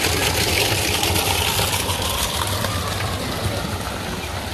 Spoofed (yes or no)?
no